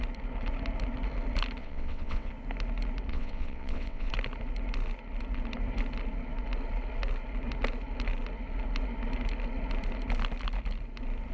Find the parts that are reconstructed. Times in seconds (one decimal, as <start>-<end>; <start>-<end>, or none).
1.6-2.3; 3.1-4.1